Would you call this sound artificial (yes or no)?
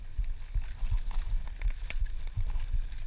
no